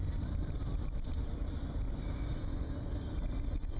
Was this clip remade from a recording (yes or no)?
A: yes